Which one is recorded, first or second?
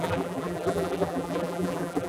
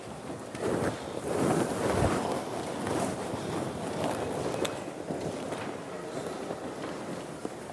second